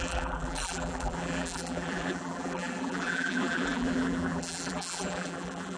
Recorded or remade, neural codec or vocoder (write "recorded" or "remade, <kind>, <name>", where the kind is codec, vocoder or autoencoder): remade, vocoder, BigVGAN v2